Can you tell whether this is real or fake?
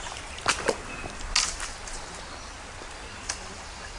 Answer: real